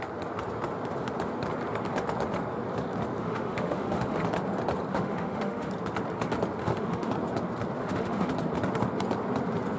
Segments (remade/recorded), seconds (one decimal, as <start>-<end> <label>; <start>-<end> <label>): 0.0-3.2 recorded; 3.2-4.2 remade; 4.2-4.9 recorded; 4.9-5.7 remade; 5.7-6.6 recorded; 6.6-7.1 remade; 7.1-7.8 recorded; 7.8-8.3 remade; 8.3-9.8 recorded